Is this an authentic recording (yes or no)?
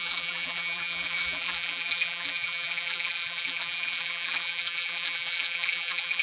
no